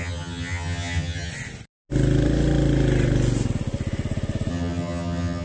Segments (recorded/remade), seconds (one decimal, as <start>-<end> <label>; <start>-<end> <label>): 0.0-1.3 remade; 1.3-4.5 recorded; 4.5-5.4 remade